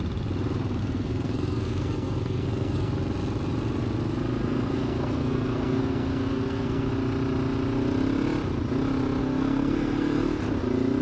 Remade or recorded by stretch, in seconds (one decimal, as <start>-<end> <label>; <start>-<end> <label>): 0.0-0.8 recorded; 0.8-2.9 remade; 2.9-4.4 recorded; 4.4-6.9 remade; 6.9-9.2 recorded; 9.2-10.4 remade; 10.4-11.0 recorded